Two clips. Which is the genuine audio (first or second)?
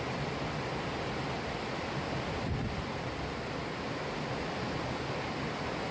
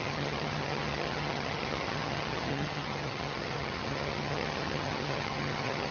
first